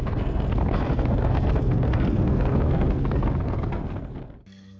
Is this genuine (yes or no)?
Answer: no